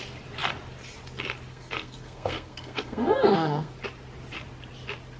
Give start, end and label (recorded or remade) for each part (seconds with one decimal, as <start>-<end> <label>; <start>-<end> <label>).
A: 0.0-1.5 recorded; 1.5-3.7 remade; 3.7-5.2 recorded